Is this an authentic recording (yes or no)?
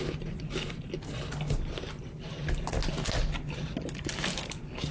yes